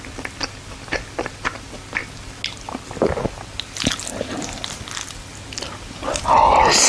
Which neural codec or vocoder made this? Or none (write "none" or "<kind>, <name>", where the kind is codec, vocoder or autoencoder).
none